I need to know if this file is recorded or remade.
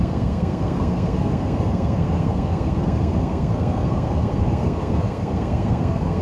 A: remade